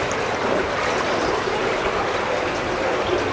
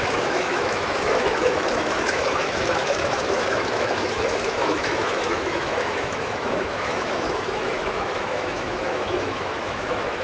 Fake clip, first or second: second